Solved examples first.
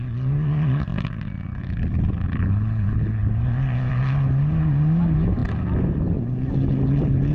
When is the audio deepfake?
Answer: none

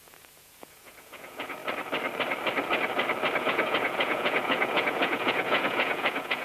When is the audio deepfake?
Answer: 0.0-1.6 (vocoder, Vocos); 3.4-6.4

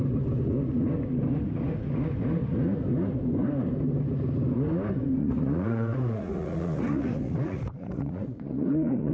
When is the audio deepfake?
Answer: 5.2-9.1 (vocoder, Vocos)

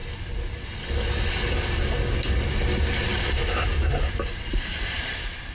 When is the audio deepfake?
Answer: 3.7-5.0 (vocoder, BigVGAN v2)

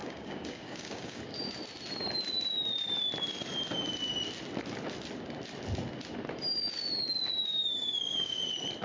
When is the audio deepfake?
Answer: 0.0-1.2 (codec, DAC); 7.6-8.4